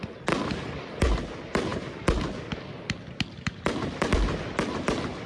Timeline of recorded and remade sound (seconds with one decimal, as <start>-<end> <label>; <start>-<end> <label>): 0.0-5.3 recorded

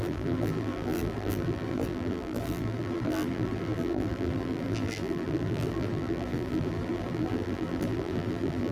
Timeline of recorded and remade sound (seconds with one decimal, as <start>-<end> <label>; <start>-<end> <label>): 0.0-8.7 remade

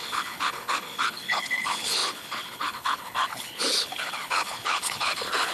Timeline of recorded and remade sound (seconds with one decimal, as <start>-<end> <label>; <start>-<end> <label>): 0.0-5.5 remade

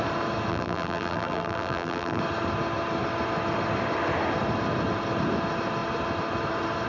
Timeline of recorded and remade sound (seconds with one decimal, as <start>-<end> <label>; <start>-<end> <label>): 0.0-0.5 recorded; 0.5-2.2 remade; 2.2-6.9 recorded

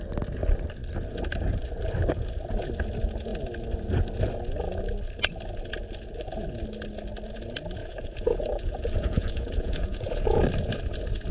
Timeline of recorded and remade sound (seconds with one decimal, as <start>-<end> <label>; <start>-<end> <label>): 0.0-7.8 recorded; 7.8-10.4 remade; 10.4-11.3 recorded